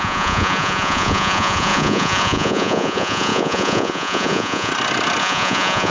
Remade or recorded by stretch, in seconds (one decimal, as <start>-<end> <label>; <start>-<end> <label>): 0.0-4.7 remade; 4.7-5.2 recorded; 5.2-5.9 remade